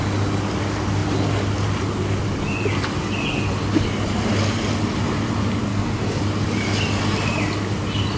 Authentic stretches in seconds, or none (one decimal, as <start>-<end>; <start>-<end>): 0.0-5.7; 6.2-8.2